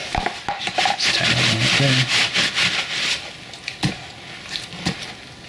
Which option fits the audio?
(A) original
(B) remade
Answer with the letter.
A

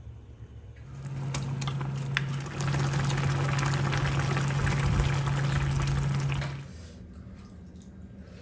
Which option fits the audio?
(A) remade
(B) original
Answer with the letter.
B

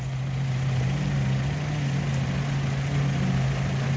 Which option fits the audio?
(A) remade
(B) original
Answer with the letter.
B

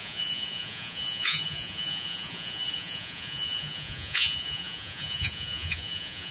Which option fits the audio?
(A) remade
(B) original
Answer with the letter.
A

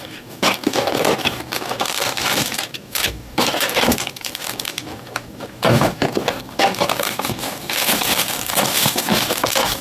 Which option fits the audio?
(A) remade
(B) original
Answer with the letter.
A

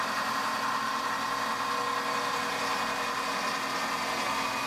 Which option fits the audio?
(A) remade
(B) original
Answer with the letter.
B